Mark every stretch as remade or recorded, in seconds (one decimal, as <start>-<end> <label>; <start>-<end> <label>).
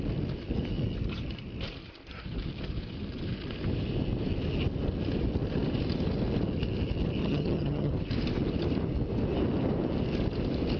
0.0-7.2 recorded; 7.2-7.9 remade; 7.9-10.8 recorded